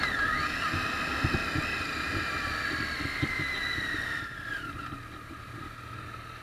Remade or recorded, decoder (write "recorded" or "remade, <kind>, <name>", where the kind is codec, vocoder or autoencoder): recorded